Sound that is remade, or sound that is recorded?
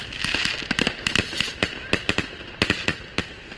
recorded